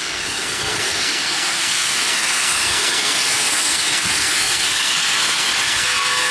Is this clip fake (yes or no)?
yes